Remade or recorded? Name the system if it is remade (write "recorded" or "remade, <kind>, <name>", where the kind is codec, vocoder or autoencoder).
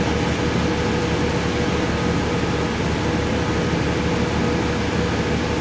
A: recorded